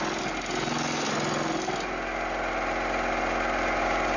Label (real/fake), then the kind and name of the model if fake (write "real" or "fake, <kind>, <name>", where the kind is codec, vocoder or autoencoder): real